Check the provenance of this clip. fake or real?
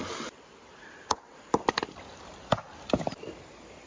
real